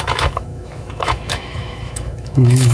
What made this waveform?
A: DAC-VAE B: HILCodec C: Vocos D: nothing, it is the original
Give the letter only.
A